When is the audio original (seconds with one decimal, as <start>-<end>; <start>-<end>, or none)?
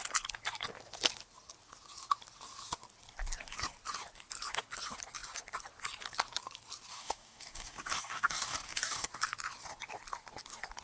0.0-6.9; 9.1-10.8